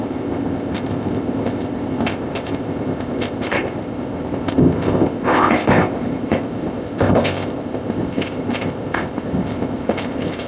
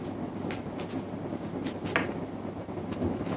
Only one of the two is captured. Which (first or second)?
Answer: second